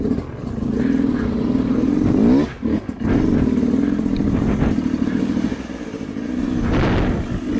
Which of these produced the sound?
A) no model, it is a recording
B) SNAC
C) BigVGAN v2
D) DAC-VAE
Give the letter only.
A